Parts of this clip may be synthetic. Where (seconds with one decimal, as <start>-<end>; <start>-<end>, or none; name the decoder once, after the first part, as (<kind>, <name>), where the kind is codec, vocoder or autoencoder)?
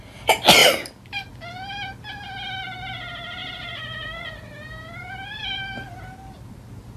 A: 3.4-5.4 (vocoder, BigVGAN v2)